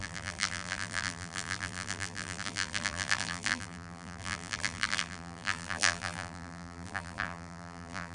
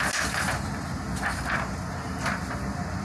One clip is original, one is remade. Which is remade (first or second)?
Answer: first